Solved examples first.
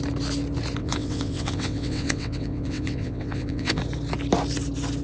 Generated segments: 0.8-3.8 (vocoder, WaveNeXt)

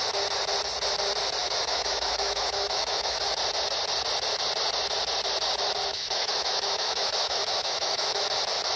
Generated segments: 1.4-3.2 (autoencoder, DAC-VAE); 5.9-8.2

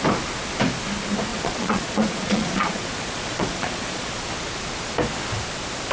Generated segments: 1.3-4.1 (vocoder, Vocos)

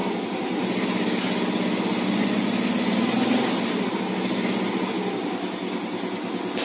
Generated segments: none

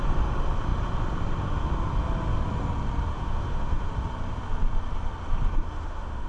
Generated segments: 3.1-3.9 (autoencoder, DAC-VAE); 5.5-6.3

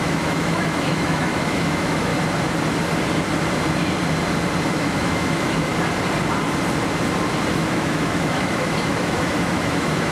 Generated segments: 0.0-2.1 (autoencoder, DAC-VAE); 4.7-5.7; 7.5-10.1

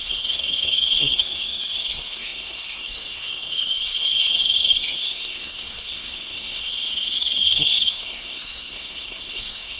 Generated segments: 0.0-9.8 (codec, SNAC)

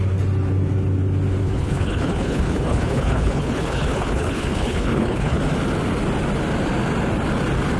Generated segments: 1.4-5.4 (codec, HILCodec)